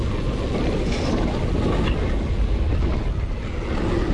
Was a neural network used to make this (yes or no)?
no